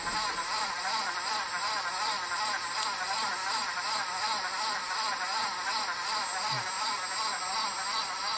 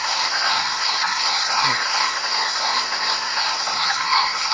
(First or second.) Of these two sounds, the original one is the first